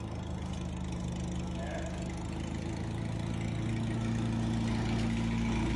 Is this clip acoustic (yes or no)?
yes